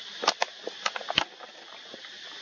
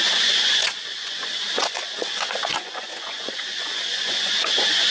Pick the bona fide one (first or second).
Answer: first